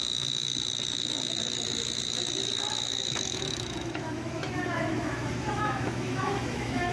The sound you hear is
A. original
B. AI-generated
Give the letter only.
B